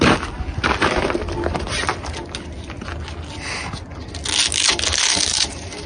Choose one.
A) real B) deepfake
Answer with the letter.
A